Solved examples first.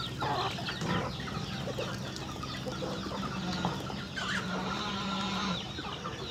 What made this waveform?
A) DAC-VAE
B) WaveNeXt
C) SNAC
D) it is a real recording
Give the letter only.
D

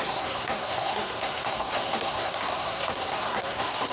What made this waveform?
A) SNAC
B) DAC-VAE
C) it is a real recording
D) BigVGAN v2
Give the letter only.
A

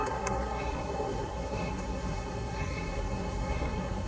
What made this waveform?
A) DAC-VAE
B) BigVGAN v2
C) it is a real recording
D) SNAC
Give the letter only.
D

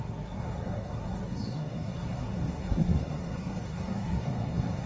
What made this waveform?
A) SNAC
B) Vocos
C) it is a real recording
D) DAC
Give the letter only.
A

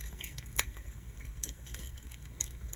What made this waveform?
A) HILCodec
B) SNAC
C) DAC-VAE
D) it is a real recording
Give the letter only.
B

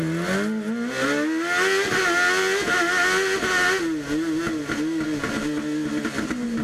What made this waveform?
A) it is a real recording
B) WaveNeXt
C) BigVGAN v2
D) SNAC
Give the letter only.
A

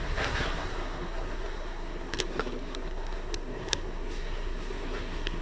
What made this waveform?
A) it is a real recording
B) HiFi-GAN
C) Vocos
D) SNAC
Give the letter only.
D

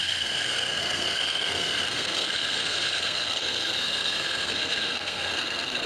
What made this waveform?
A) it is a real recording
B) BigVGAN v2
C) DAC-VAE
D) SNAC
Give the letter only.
D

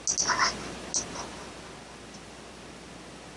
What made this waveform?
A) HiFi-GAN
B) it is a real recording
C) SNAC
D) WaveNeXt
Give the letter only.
B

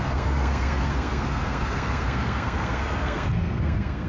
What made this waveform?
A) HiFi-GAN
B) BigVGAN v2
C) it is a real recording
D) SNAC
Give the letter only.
D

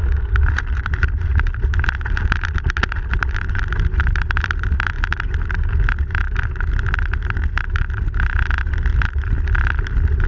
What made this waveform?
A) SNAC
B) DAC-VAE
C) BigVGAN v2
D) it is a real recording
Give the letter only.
D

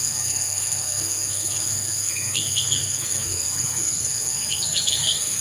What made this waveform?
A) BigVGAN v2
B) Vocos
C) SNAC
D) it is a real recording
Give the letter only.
C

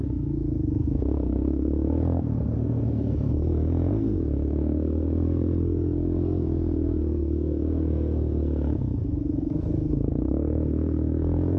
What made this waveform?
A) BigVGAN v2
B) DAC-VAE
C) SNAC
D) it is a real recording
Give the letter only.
C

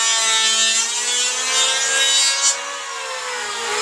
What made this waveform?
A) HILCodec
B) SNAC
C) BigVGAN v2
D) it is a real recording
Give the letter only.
D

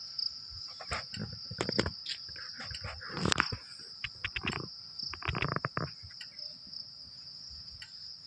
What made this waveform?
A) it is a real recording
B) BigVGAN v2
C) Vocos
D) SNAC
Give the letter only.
A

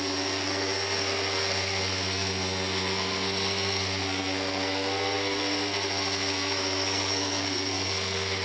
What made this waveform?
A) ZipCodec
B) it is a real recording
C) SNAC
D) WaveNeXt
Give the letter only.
C